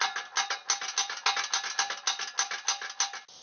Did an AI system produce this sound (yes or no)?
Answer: no